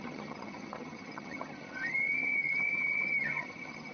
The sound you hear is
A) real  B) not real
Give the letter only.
B